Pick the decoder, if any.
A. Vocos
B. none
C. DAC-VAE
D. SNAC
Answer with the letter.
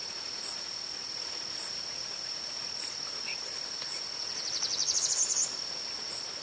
B